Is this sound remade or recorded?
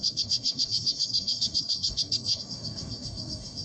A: remade